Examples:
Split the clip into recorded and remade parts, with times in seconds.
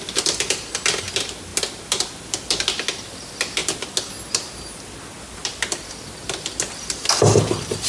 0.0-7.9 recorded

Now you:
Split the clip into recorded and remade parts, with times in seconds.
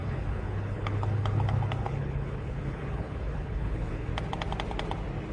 0.0-4.1 remade; 4.1-5.3 recorded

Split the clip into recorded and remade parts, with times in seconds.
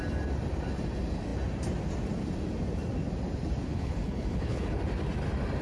0.0-3.7 recorded; 3.7-4.8 remade; 4.8-5.6 recorded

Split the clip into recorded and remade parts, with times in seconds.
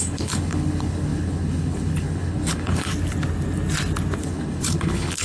0.0-2.9 remade; 2.9-4.2 recorded; 4.2-5.2 remade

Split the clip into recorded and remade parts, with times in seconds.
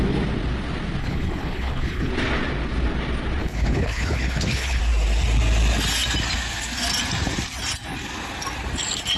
0.0-1.0 recorded; 1.0-2.1 remade; 2.1-3.4 recorded; 3.4-4.8 remade; 4.8-9.2 recorded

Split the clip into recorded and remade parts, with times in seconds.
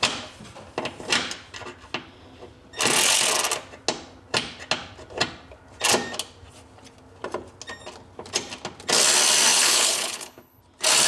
0.0-9.5 recorded; 9.5-10.6 remade; 10.6-11.1 recorded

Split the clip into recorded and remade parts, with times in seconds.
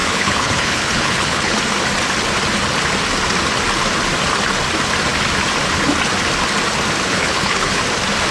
0.0-1.6 remade; 1.6-7.1 recorded; 7.1-7.8 remade; 7.8-8.3 recorded